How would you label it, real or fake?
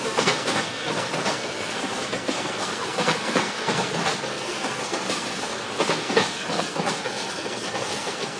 fake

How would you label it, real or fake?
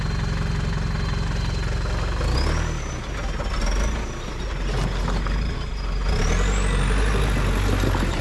real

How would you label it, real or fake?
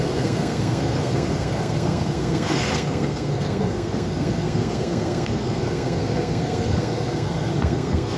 fake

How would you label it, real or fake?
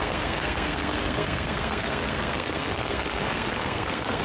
fake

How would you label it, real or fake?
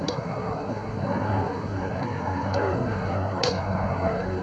fake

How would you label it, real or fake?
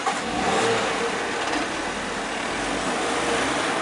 real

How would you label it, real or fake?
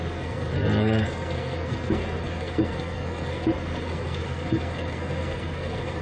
fake